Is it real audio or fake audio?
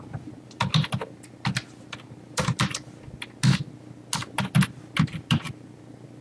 real